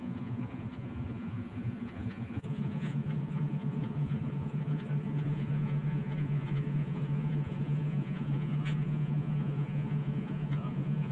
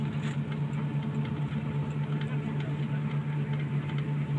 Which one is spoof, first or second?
first